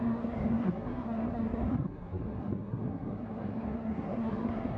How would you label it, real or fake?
fake